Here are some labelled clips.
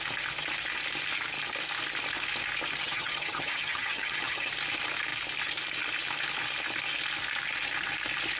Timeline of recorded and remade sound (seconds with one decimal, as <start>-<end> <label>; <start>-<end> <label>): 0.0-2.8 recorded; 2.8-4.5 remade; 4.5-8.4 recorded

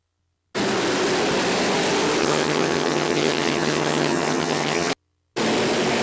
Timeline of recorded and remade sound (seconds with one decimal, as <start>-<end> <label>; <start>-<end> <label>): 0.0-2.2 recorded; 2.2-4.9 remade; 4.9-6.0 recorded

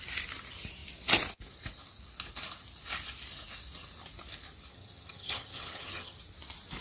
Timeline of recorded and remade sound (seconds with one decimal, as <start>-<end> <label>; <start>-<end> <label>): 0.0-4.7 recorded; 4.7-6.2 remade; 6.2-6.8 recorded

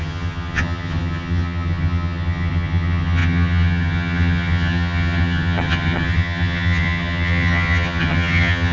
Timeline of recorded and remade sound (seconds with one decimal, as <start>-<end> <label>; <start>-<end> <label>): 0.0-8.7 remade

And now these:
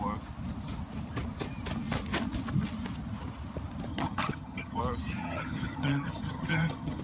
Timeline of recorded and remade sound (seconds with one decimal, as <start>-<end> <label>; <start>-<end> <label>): 0.0-3.9 recorded; 3.9-4.8 remade; 4.8-5.2 recorded; 5.2-7.0 remade

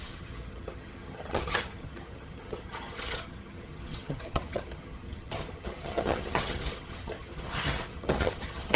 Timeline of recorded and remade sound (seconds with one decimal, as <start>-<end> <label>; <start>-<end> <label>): 0.0-8.8 remade